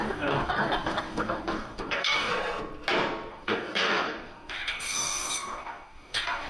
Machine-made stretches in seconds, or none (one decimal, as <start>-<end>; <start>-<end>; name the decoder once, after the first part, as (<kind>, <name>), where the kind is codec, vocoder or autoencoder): 0.0-2.3 (codec, DAC); 3.3-6.5

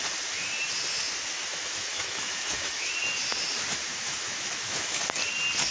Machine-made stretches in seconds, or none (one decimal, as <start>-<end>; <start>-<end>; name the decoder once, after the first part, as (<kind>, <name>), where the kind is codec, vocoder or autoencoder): 1.5-2.9 (autoencoder, DAC-VAE); 3.9-5.0

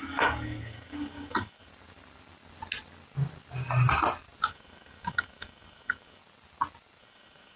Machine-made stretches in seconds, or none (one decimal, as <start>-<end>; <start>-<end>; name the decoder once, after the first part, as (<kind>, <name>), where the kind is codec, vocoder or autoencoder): 0.0-1.7 (codec, DAC); 4.5-6.2; 7.0-7.6

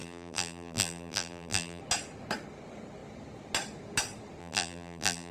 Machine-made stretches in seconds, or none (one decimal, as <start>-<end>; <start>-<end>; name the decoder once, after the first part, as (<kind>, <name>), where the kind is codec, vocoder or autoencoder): 0.0-1.8 (vocoder, BigVGAN v2); 4.4-5.3